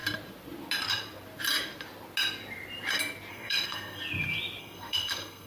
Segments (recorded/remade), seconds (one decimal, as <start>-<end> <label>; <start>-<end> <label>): 0.0-3.3 recorded; 3.3-4.0 remade; 4.0-4.6 recorded; 4.6-5.5 remade